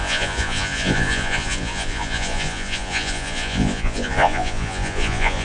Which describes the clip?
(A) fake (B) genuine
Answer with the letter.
A